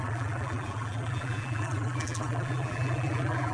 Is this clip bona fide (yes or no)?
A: no